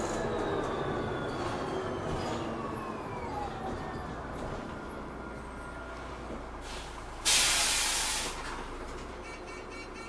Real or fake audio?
real